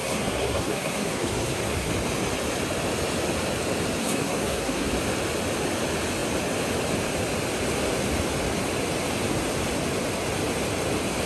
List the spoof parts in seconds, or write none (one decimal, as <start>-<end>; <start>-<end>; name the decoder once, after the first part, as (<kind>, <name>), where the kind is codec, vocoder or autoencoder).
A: 0.0-1.9 (codec, SNAC); 4.0-4.9